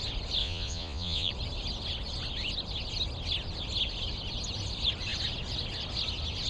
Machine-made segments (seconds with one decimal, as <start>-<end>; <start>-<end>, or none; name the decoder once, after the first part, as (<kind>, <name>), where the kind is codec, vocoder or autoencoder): 0.4-1.3 (vocoder, Vocos)

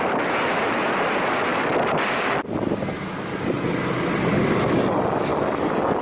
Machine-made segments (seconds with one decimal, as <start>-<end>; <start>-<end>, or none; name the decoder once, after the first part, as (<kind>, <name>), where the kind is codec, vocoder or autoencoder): none

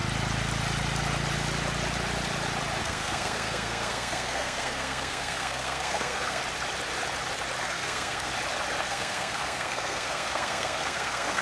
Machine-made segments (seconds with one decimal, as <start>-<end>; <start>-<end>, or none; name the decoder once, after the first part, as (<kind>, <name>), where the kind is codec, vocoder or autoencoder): 2.8-6.4 (codec, SNAC); 7.6-8.3; 8.8-11.4

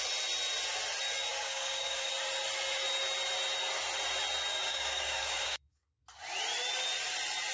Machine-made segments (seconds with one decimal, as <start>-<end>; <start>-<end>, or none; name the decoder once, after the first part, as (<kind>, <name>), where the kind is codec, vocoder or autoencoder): 1.3-2.1 (codec, DAC); 4.5-6.0

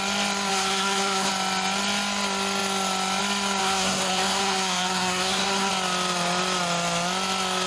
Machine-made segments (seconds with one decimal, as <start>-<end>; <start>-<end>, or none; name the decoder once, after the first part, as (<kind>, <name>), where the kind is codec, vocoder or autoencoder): 0.5-1.3 (codec, SNAC); 3.6-5.7

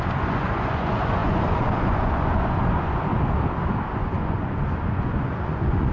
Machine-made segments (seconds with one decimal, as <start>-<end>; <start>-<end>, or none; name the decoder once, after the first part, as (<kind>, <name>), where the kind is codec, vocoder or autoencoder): 0.0-3.1 (vocoder, Vocos); 3.9-5.9